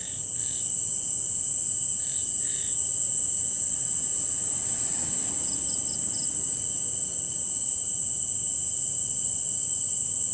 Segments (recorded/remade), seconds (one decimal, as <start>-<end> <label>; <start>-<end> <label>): 0.0-9.0 recorded; 9.0-9.6 remade; 9.6-10.3 recorded